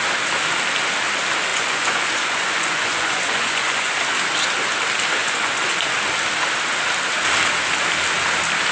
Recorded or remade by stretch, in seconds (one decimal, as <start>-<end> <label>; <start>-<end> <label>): 0.0-1.5 recorded; 1.5-3.9 remade; 3.9-5.2 recorded; 5.2-5.9 remade; 5.9-8.7 recorded